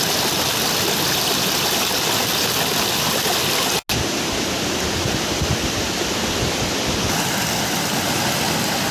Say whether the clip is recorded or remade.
recorded